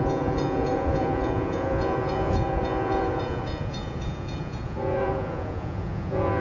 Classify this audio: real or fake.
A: fake